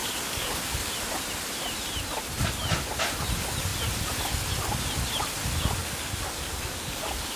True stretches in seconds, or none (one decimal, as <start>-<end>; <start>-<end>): 0.9-5.8